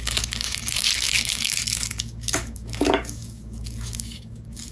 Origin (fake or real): fake